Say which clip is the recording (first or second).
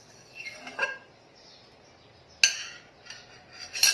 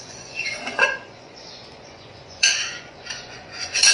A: first